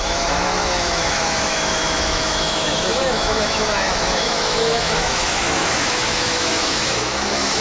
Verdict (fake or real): fake